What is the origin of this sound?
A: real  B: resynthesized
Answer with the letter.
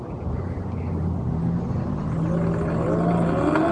A